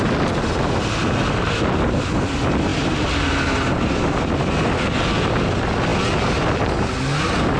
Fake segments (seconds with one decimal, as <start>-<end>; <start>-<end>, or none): none